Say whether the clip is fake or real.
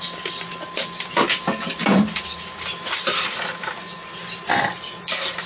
real